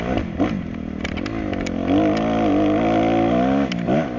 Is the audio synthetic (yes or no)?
no